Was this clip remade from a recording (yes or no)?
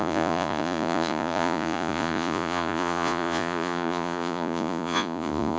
yes